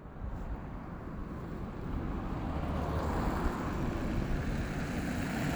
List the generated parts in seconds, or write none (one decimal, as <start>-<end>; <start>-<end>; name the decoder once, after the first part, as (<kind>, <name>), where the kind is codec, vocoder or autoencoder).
none